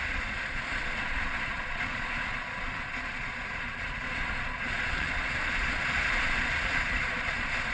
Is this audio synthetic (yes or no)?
yes